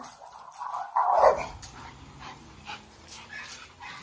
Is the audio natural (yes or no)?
yes